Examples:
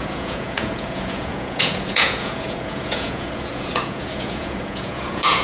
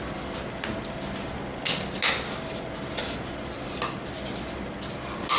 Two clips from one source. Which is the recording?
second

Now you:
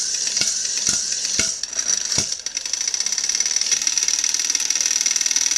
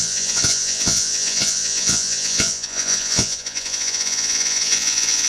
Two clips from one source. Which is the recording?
first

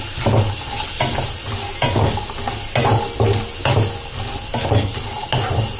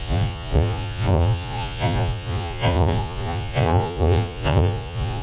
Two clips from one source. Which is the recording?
first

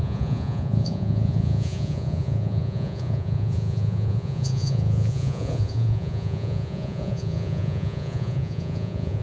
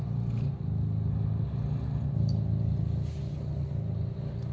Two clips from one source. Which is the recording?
second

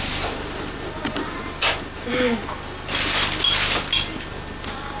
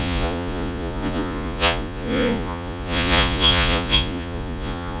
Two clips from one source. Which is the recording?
first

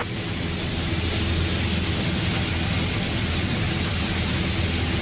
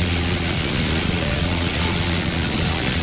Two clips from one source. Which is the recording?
first